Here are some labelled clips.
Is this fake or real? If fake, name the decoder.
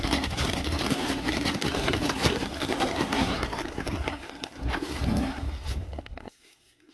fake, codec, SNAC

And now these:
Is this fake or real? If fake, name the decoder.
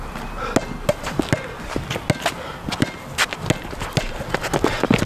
real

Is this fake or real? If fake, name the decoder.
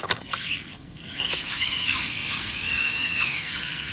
fake, codec, SNAC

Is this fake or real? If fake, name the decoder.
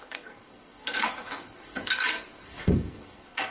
fake, codec, SNAC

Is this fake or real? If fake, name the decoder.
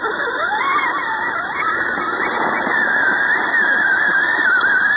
real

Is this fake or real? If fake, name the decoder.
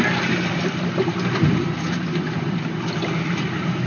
real